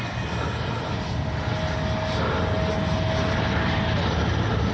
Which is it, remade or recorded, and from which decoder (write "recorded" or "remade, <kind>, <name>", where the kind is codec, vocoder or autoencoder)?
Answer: recorded